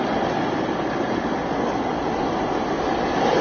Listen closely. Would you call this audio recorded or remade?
recorded